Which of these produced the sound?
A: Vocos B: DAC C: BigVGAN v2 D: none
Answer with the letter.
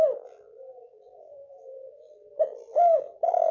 C